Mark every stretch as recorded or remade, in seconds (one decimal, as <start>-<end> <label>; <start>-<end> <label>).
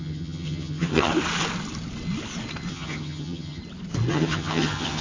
0.0-1.1 remade; 1.1-2.7 recorded; 2.7-3.6 remade; 3.6-4.1 recorded; 4.1-5.0 remade